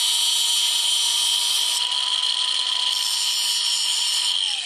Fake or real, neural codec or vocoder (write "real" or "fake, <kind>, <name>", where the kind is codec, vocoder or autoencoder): real